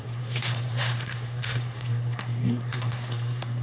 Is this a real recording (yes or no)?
no